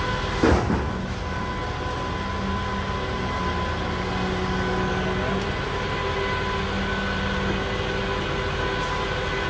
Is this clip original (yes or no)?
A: yes